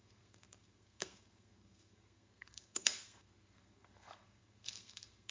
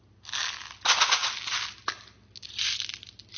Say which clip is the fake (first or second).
first